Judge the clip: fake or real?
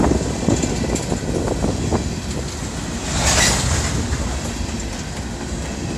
real